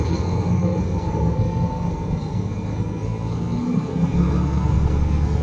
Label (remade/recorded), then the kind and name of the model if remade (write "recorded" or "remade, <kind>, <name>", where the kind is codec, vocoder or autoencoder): remade, codec, SNAC